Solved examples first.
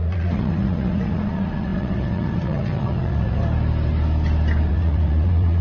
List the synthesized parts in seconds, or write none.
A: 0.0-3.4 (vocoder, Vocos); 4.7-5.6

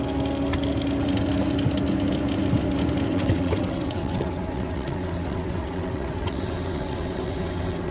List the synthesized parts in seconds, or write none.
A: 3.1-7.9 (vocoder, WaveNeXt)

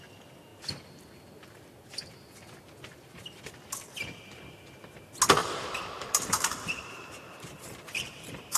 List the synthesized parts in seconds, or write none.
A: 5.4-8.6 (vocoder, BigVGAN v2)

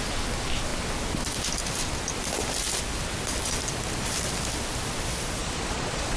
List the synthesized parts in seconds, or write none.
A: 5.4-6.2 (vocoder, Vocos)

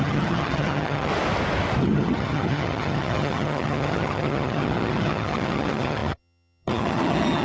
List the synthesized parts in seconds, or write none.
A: 0.0-1.1 (vocoder, HiFi-GAN); 1.8-7.4

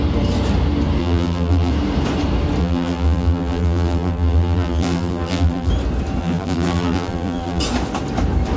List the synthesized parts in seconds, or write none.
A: 1.0-1.7 (vocoder, BigVGAN v2); 2.6-5.7; 6.2-7.6

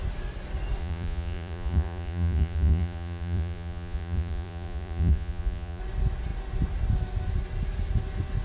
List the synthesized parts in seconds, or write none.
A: 0.8-5.8 (vocoder, Vocos)